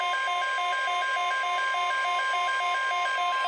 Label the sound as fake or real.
real